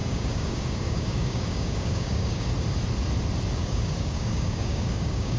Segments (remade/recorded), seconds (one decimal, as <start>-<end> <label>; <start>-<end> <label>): 0.0-2.5 remade; 2.5-3.6 recorded; 3.6-5.4 remade